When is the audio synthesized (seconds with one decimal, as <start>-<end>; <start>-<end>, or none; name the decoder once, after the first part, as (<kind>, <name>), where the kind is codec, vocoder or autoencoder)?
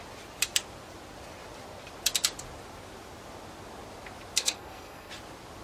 4.4-5.1 (codec, SNAC)